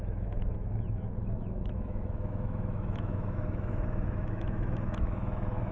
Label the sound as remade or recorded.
remade